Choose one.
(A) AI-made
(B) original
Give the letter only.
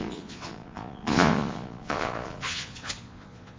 A